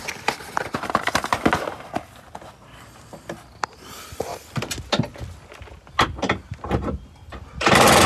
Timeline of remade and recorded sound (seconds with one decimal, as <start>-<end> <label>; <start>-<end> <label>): 0.0-8.1 recorded